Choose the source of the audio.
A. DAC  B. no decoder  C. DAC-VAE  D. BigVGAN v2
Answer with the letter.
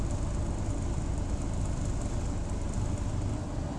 B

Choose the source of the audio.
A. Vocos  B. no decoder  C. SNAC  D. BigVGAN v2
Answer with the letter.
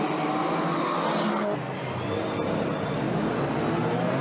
B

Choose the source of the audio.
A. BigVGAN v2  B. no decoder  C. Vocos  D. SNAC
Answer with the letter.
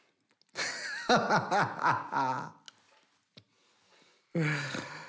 B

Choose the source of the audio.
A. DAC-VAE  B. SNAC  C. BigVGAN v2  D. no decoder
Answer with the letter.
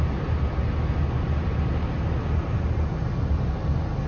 D